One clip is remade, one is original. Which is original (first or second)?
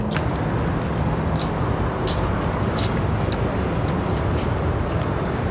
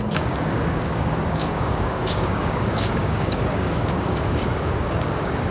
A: first